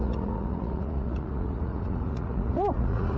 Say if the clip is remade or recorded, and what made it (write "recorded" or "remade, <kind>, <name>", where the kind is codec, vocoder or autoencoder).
remade, vocoder, Vocos